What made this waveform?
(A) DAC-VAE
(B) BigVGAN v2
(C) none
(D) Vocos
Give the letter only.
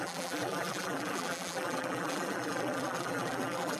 B